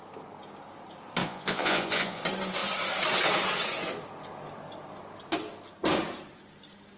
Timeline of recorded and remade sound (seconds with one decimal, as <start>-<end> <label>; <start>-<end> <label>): 0.0-1.2 recorded; 1.2-2.2 remade; 2.2-7.0 recorded